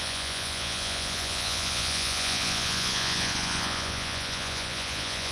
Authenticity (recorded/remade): remade